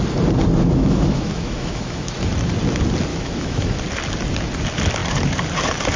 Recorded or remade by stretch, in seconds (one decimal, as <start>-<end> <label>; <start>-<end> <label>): 0.0-0.6 recorded; 0.6-2.2 remade; 2.2-3.1 recorded; 3.1-3.8 remade; 3.8-6.0 recorded